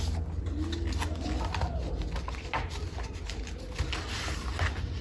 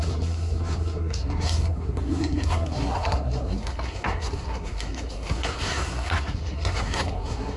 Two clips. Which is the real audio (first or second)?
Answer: first